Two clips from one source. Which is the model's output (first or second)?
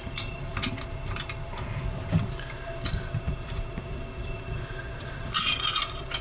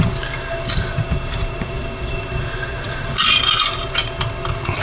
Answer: first